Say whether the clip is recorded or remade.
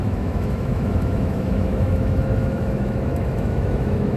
remade